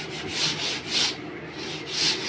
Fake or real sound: real